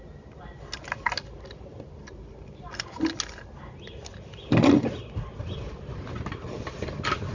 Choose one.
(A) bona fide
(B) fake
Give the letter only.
A